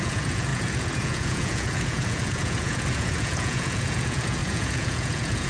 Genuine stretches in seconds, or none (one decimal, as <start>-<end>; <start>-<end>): none